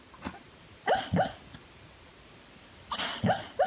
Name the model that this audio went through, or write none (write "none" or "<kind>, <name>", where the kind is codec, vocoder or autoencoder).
none